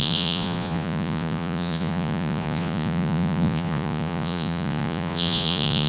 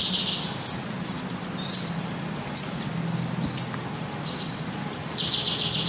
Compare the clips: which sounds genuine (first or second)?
second